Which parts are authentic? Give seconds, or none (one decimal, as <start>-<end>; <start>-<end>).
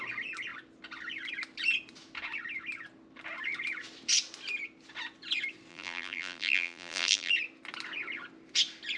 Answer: 0.0-5.7; 7.3-9.0